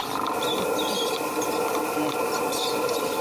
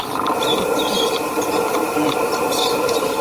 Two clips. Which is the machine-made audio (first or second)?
second